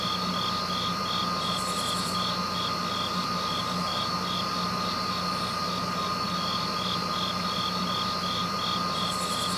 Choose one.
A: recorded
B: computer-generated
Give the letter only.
A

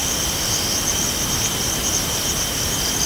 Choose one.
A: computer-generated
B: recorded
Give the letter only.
B